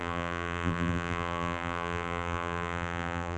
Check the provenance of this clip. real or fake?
fake